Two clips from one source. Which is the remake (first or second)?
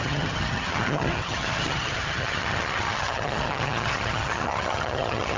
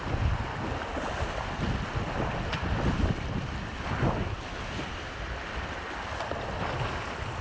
first